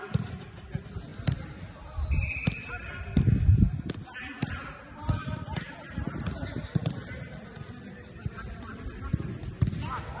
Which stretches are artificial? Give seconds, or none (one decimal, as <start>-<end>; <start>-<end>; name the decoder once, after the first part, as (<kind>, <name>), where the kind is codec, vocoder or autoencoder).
none